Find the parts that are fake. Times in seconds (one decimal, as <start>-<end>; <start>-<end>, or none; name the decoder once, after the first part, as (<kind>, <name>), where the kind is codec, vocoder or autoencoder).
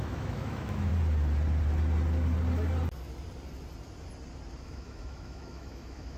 0.0-0.9 (autoencoder, DAC-VAE); 4.6-6.2